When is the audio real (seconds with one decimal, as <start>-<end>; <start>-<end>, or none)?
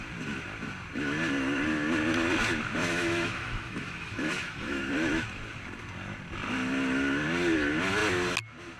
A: 0.0-2.8; 4.8-8.8